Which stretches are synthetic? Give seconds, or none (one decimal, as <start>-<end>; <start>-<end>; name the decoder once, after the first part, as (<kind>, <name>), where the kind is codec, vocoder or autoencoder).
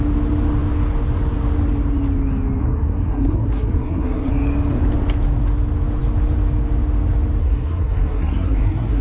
2.6-4.3 (codec, SNAC); 7.4-9.0